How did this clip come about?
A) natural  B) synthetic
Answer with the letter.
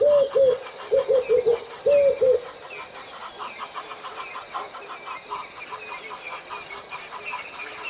A